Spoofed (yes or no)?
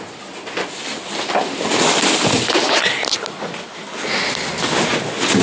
no